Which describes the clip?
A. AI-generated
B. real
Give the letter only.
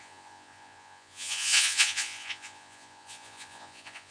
A